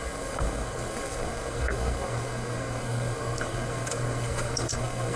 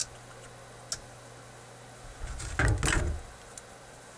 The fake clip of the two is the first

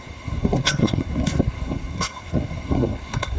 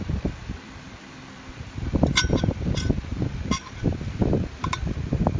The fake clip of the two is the first